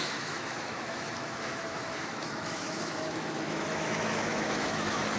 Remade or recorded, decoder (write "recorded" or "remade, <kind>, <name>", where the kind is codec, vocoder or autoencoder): remade, autoencoder, DAC-VAE